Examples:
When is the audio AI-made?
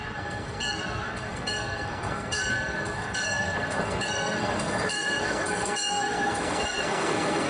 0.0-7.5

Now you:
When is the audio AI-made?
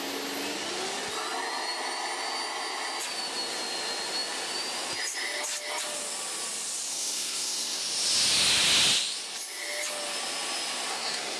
6.9-7.8; 10.9-11.4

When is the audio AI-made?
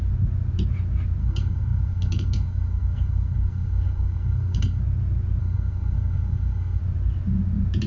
1.2-4.8; 5.4-6.8